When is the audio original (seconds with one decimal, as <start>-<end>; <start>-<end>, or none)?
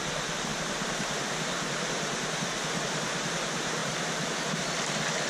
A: 0.0-0.5; 1.1-3.8; 4.3-5.3